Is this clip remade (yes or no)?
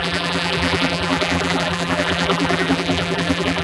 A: yes